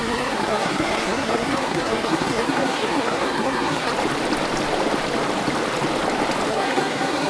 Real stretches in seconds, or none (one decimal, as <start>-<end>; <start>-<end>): 3.9-6.5